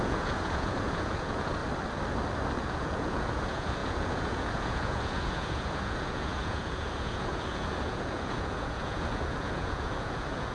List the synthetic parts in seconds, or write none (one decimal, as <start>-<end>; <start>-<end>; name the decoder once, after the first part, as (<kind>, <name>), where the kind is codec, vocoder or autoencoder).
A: 0.0-1.6 (vocoder, Vocos); 2.6-10.5

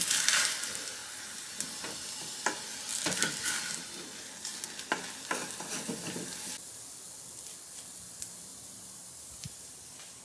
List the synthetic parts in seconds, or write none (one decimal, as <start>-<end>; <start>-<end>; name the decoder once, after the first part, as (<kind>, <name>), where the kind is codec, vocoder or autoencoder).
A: 8.5-10.2 (vocoder, BigVGAN v2)

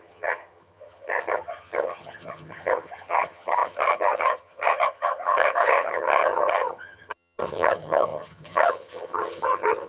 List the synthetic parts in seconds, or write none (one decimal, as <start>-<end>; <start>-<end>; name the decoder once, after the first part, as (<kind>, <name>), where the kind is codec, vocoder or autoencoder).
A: 0.0-9.9 (vocoder, HiFi-GAN)

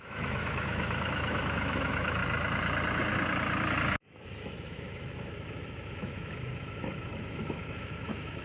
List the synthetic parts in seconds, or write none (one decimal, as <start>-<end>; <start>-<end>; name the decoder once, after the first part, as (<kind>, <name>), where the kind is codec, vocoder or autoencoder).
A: 0.0-2.2 (autoencoder, DAC-VAE); 4.0-8.4

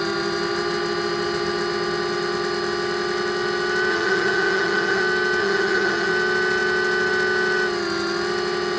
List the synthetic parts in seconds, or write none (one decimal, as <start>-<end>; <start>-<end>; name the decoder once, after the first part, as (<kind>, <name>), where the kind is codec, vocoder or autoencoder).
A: 3.9-5.0 (vocoder, HiFi-GAN); 5.4-6.1

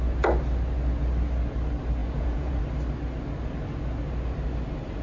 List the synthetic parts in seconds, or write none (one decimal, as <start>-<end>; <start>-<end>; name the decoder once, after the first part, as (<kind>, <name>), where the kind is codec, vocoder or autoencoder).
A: 2.0-2.6 (vocoder, Vocos)

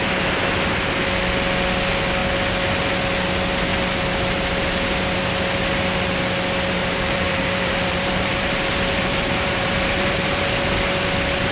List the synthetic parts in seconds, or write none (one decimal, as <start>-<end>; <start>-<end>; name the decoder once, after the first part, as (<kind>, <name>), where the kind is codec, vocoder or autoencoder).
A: 6.8-10.4 (vocoder, BigVGAN v2)

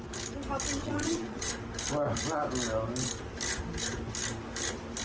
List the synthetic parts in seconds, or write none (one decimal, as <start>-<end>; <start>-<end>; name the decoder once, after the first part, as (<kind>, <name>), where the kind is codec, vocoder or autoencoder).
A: 0.8-1.5 (vocoder, Vocos)